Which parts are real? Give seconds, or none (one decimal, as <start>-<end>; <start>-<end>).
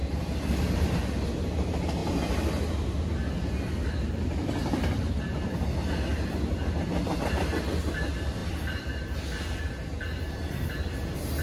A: 1.1-6.1; 7.4-8.4; 9.0-11.4